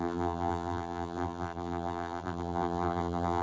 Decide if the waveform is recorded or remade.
remade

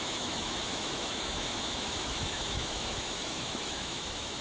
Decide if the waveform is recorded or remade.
remade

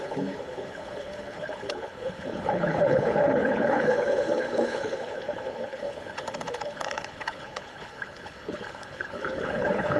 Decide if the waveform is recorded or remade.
remade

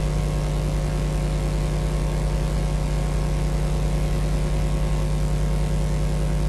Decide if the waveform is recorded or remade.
recorded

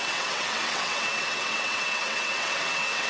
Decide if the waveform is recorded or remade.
remade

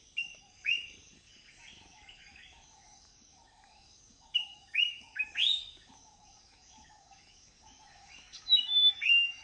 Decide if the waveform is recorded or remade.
remade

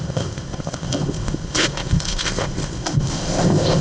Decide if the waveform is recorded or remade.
remade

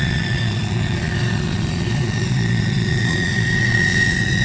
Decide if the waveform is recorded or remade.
remade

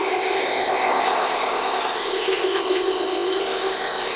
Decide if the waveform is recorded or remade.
remade